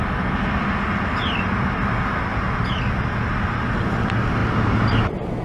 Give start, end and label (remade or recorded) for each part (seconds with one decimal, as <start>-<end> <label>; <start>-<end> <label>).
0.0-2.3 recorded; 2.3-3.1 remade; 3.1-5.4 recorded